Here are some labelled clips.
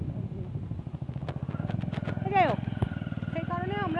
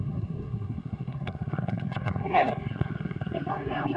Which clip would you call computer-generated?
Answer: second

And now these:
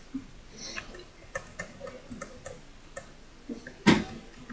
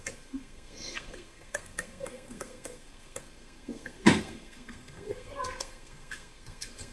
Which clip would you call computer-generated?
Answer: second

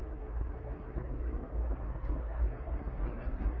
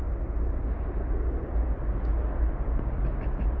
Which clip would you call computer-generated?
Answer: first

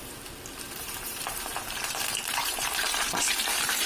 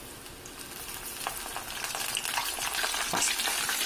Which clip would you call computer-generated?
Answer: first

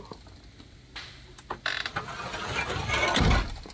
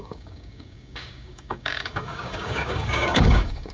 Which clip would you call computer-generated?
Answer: second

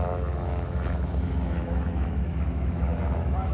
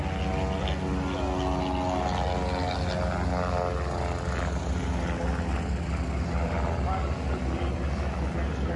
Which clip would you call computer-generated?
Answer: first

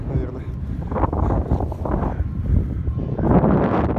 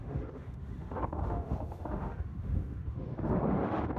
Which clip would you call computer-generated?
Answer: second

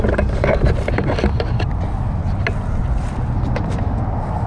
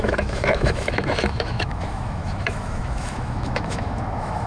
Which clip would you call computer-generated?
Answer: second